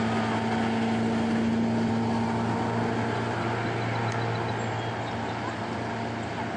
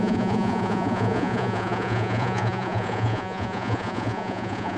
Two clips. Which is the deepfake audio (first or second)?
second